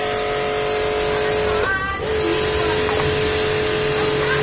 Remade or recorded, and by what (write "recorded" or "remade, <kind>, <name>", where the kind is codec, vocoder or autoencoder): recorded